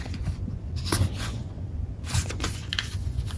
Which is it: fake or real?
fake